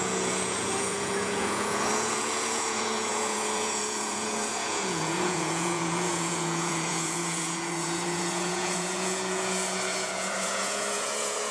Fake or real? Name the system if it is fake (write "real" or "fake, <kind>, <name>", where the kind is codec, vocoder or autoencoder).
fake, vocoder, Vocos